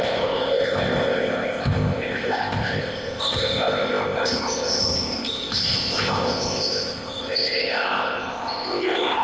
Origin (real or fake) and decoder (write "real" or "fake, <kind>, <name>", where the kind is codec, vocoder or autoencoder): fake, codec, ZipCodec